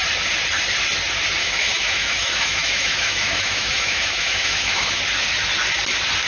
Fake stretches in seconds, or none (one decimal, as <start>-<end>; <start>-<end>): 1.4-5.0